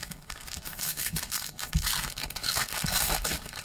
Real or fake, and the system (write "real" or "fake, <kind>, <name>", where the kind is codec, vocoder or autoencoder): fake, codec, SNAC